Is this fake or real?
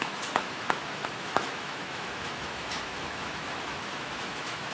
fake